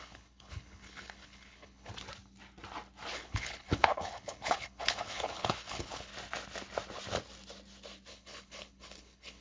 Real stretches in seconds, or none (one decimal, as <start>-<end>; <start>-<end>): 1.9-3.1; 6.1-8.1